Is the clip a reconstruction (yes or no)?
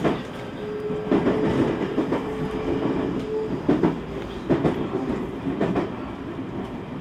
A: no